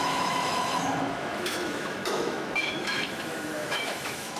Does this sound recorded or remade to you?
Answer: remade